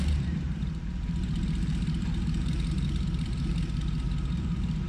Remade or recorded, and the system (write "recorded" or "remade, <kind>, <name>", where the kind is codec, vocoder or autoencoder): remade, vocoder, BigVGAN v2